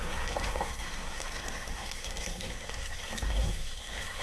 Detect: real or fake fake